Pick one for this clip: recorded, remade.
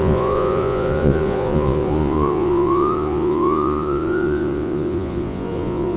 remade